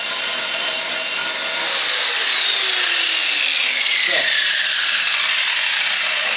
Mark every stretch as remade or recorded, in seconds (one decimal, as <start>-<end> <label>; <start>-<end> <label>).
0.0-1.2 remade; 1.2-5.0 recorded; 5.0-6.4 remade